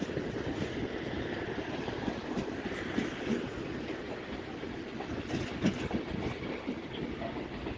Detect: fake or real real